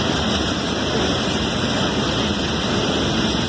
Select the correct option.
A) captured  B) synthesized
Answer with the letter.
A